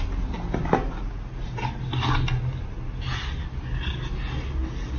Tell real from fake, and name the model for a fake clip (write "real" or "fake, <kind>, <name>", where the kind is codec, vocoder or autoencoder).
real